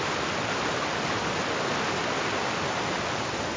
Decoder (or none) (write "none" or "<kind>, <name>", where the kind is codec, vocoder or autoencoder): none